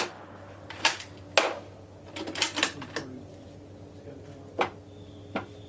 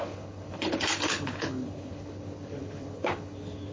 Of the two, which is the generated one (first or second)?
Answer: second